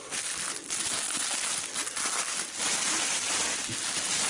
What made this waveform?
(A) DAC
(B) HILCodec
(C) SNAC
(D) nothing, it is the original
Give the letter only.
D